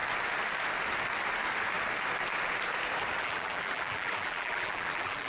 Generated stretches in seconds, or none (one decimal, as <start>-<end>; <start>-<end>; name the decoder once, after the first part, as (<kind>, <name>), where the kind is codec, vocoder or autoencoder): 3.2-5.3 (vocoder, BigVGAN v2)

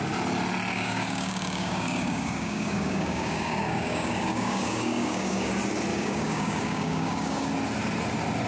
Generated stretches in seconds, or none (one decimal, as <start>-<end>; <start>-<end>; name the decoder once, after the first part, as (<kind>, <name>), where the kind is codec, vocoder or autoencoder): 0.7-5.5 (codec, DAC); 5.9-7.5

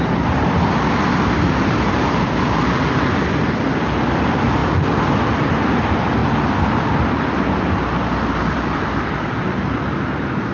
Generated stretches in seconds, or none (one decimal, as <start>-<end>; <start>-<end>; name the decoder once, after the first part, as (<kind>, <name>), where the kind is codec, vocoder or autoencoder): none

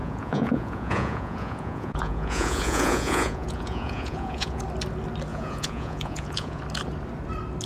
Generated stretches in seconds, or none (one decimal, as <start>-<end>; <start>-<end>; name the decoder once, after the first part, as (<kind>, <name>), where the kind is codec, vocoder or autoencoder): 0.0-4.6 (vocoder, Vocos); 5.3-6.6

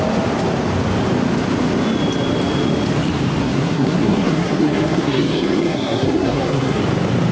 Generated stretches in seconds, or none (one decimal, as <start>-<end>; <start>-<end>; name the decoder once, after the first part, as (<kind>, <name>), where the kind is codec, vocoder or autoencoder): 3.4-6.8 (codec, SNAC)

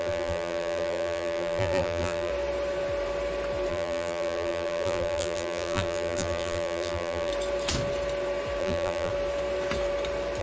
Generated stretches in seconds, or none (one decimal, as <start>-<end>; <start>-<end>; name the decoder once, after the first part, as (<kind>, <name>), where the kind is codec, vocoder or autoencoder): 0.0-2.3 (vocoder, BigVGAN v2); 3.7-7.3; 8.6-9.1